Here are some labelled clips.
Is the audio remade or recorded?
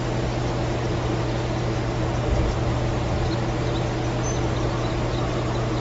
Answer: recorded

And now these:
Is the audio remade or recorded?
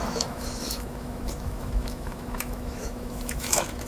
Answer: remade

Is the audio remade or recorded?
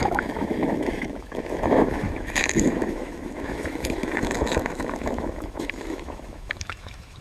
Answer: remade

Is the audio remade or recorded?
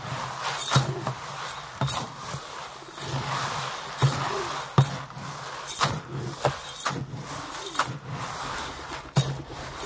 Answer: recorded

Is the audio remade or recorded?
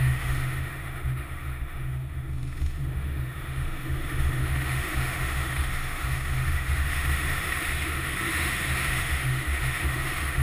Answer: remade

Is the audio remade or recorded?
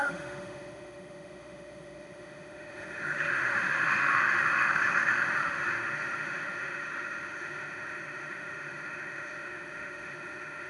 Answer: remade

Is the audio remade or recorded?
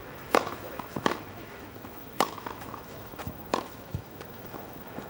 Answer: remade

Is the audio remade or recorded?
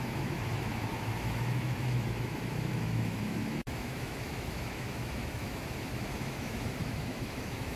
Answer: remade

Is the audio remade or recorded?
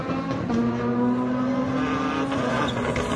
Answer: recorded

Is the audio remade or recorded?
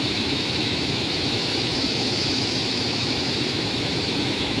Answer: remade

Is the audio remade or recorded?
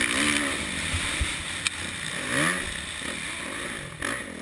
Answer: recorded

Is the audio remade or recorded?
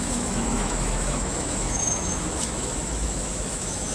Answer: remade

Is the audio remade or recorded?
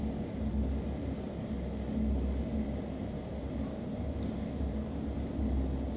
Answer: recorded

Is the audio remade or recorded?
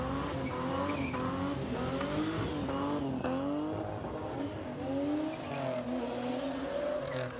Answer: recorded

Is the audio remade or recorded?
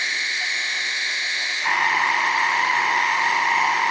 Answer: remade